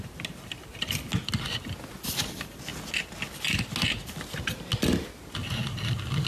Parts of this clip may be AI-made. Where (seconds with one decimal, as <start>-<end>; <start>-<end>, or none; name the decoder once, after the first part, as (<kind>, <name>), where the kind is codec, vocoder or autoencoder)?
none